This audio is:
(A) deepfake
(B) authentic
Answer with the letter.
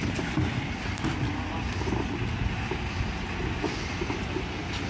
B